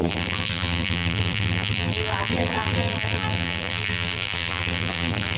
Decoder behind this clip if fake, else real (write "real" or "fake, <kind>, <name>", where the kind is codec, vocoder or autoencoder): fake, vocoder, BigVGAN v2